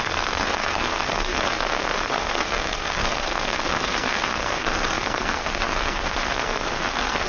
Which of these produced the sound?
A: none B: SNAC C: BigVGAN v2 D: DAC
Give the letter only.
B